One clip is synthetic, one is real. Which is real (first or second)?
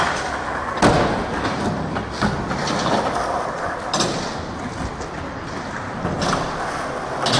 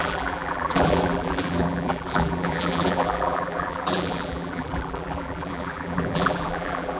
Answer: first